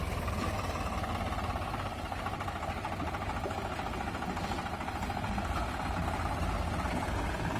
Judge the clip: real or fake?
real